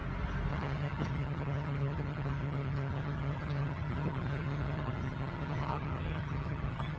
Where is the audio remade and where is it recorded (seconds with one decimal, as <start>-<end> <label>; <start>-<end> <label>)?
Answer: 0.0-0.5 recorded; 0.5-7.0 remade